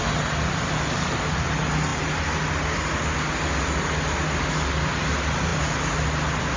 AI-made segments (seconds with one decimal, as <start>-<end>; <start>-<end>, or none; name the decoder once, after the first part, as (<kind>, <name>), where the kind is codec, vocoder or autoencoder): none